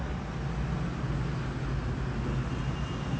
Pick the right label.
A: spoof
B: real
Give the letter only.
B